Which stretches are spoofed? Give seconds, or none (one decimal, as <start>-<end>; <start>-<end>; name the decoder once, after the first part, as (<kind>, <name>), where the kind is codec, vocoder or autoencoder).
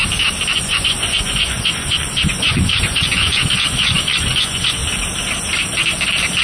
0.5-4.8 (vocoder, Vocos)